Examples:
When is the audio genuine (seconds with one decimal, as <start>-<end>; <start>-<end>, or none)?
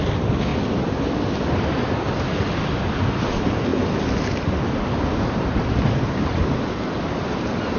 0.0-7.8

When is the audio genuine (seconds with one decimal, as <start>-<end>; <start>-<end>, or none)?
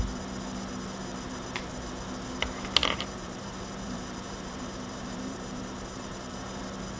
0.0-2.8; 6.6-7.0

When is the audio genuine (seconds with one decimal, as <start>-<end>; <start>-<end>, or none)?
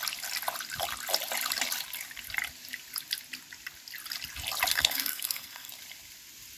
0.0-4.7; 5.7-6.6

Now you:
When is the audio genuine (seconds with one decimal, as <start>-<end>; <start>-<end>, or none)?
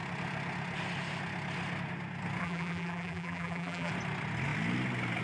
0.0-2.4; 3.9-5.2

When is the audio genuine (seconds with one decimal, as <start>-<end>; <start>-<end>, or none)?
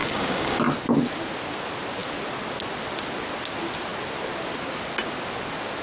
0.6-5.8